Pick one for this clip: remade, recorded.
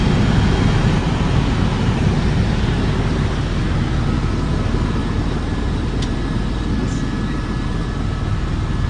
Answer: recorded